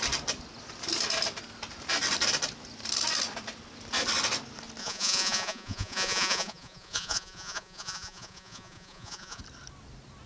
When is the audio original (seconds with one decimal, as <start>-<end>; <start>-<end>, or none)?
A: 0.0-4.8; 9.4-10.3